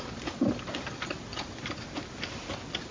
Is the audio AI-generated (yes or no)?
no